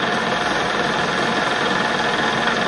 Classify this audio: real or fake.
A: real